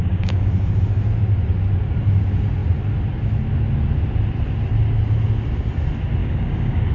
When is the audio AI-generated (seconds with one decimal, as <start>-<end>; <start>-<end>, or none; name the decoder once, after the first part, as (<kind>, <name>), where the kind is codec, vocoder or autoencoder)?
0.0-0.5 (codec, DAC); 6.2-6.9